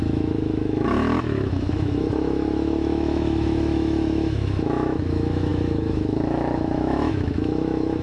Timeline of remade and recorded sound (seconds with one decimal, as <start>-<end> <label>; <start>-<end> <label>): 0.0-8.0 remade